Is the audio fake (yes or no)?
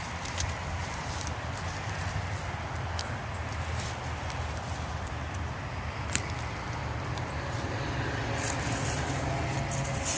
no